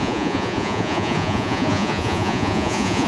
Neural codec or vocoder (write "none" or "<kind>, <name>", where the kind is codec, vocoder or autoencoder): vocoder, Vocos